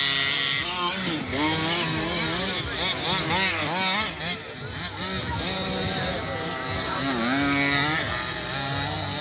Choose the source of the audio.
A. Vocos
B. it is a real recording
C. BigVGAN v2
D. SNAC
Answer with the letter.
B